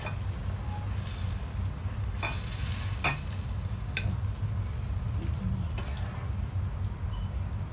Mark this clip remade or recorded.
recorded